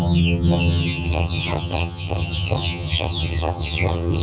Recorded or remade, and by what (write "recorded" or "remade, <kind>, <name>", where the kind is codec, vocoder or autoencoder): remade, vocoder, HiFi-GAN